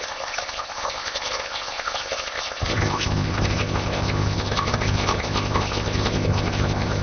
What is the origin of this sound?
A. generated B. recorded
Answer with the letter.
A